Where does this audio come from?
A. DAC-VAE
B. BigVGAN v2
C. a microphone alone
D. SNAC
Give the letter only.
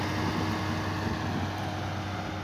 C